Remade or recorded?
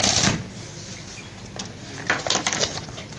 recorded